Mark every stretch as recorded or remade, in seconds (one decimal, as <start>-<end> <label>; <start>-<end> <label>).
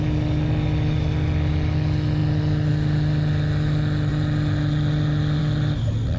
0.0-6.2 recorded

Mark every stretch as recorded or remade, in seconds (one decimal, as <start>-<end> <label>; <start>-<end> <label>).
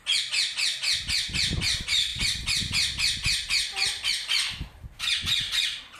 0.0-6.0 recorded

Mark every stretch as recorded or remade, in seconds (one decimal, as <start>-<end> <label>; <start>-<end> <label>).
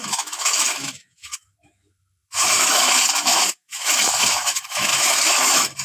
0.0-5.8 remade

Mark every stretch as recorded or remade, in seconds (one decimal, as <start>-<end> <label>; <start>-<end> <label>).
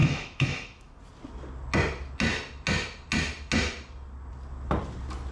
0.0-1.0 remade; 1.0-5.3 recorded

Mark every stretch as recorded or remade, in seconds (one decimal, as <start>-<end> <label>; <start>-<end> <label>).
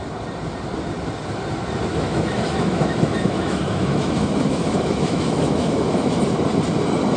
0.0-1.9 recorded; 1.9-6.2 remade; 6.2-7.2 recorded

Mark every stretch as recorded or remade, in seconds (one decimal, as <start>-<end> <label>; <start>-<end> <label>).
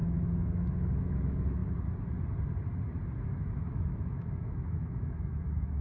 0.0-1.6 remade; 1.6-3.2 recorded; 3.2-5.8 remade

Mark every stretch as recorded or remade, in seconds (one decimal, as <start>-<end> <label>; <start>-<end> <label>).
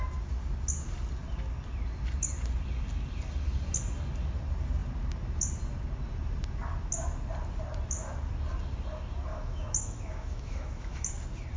0.0-9.3 recorded; 9.3-11.1 remade; 11.1-11.6 recorded